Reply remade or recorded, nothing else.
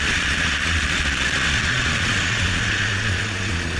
remade